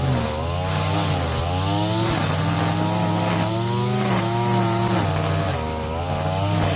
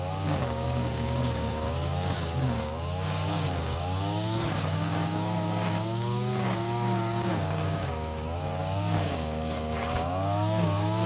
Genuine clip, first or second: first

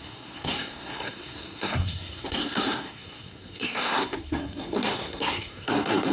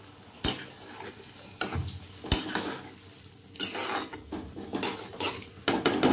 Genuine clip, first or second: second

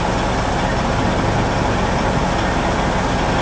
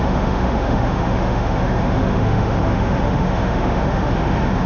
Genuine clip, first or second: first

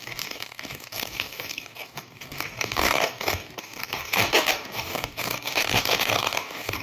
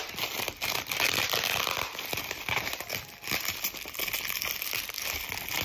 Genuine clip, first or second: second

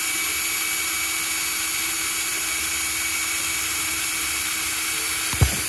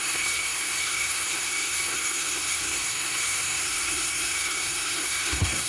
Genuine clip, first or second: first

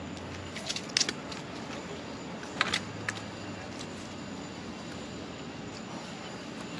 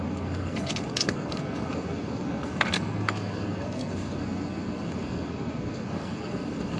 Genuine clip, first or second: first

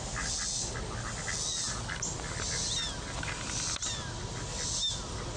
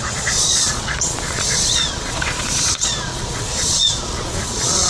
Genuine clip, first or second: first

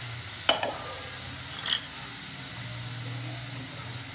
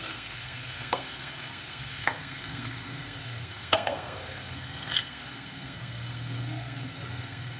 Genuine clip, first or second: first